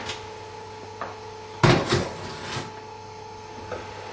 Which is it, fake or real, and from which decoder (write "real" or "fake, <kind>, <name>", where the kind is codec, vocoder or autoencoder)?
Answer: real